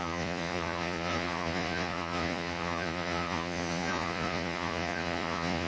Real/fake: fake